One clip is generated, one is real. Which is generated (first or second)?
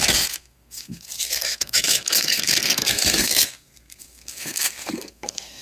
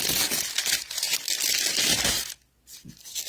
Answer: first